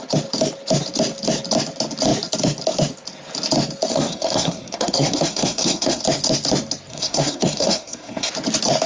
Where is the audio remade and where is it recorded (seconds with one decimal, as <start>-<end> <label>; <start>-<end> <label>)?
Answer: 0.0-3.9 recorded; 3.9-6.0 remade; 6.0-6.9 recorded; 6.9-8.3 remade; 8.3-8.9 recorded